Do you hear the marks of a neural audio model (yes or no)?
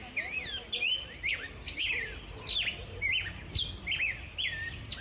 no